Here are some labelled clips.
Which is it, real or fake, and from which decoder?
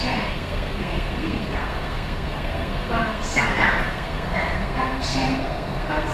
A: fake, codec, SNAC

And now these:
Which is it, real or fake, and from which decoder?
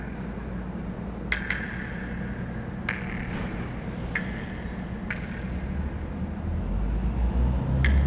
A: real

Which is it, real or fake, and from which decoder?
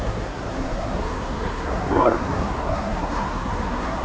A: fake, codec, SNAC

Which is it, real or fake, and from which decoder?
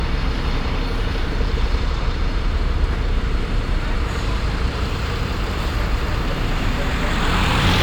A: fake, vocoder, BigVGAN v2